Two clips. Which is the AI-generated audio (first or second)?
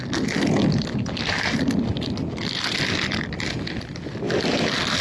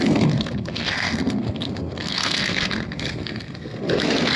second